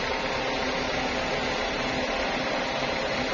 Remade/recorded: recorded